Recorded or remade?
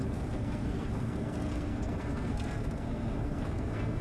remade